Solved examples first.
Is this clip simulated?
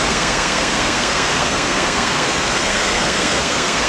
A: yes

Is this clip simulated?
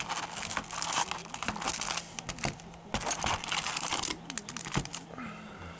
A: no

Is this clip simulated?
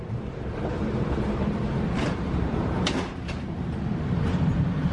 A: yes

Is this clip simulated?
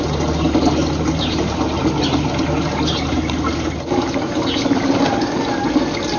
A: no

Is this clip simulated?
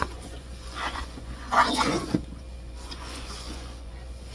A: yes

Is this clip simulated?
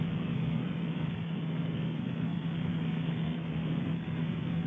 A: yes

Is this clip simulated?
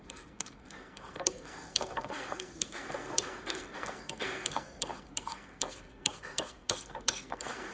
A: yes